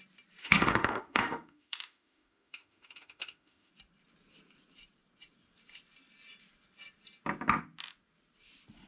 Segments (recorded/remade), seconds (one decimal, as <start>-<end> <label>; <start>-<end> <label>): 0.0-0.4 recorded; 0.4-3.7 remade; 3.7-8.9 recorded